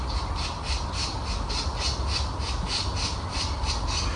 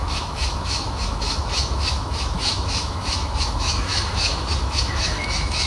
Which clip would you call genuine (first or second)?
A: first